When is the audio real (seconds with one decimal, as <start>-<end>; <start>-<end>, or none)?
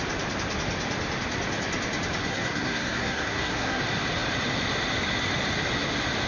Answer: 0.0-2.2; 3.8-6.3